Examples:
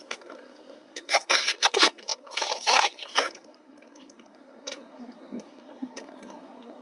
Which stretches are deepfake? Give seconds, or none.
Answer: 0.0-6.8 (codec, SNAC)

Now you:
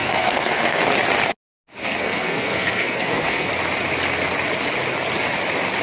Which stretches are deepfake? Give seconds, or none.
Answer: 0.0-0.8 (codec, SNAC); 1.8-3.5

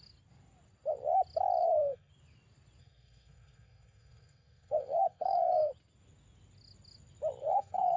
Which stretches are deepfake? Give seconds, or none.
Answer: 1.6-2.1 (codec, SNAC); 2.8-5.7; 7.4-8.0